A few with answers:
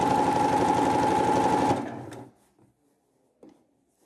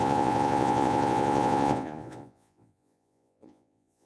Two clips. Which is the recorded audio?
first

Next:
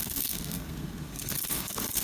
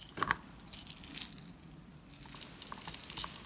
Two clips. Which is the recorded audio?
second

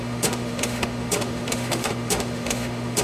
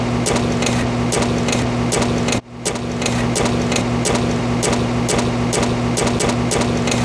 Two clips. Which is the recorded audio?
second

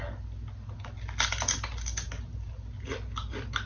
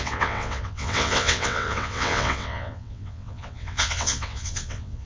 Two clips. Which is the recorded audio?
first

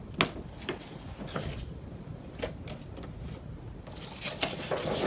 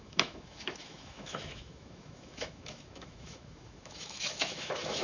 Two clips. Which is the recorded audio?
first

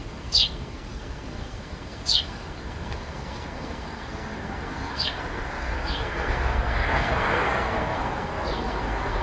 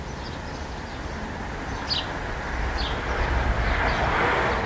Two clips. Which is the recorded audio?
second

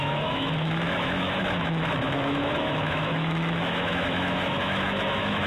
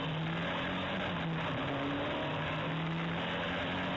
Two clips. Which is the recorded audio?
second